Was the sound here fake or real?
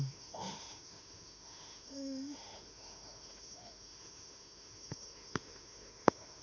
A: fake